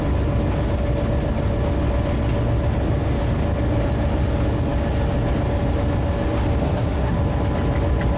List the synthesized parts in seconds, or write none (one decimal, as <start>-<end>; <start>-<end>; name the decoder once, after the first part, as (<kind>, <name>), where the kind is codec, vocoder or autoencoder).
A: 6.6-7.2 (codec, SNAC)